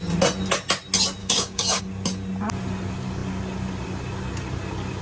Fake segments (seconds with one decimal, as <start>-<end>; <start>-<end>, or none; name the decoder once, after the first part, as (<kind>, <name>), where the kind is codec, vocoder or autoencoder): 1.2-1.8 (codec, DAC)